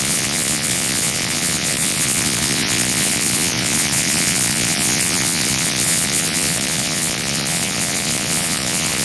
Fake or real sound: fake